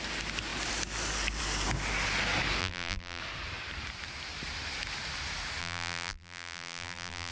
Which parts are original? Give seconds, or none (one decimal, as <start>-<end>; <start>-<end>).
0.0-2.6; 3.2-5.6